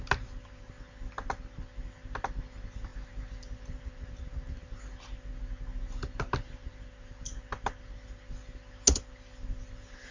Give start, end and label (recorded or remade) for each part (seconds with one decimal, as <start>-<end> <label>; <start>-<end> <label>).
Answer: 0.0-10.1 recorded

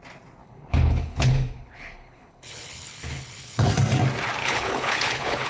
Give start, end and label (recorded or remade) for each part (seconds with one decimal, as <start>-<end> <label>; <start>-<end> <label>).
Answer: 0.0-0.4 recorded; 0.4-3.7 remade; 3.7-4.4 recorded; 4.4-5.5 remade

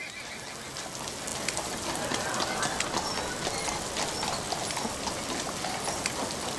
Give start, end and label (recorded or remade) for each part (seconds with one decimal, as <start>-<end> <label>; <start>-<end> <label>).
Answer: 0.0-6.6 recorded